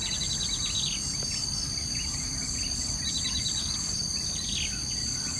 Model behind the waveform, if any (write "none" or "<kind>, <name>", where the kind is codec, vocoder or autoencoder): none